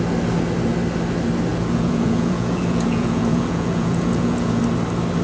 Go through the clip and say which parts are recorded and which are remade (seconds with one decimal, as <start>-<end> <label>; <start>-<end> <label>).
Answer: 0.0-1.5 recorded; 1.5-4.6 remade; 4.6-5.2 recorded